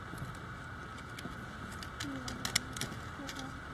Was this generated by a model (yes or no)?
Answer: no